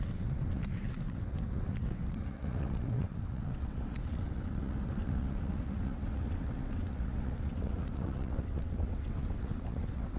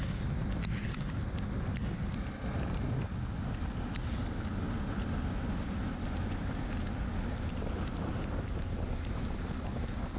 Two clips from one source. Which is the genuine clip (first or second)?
second